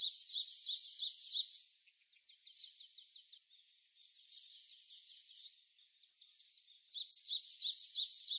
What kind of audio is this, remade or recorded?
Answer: recorded